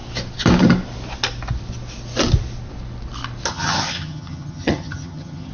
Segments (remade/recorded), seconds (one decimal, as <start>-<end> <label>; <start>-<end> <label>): 0.0-3.5 recorded; 3.5-5.5 remade